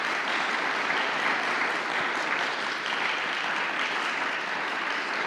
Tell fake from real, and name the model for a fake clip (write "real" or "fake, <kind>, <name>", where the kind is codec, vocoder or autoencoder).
fake, vocoder, BigVGAN v2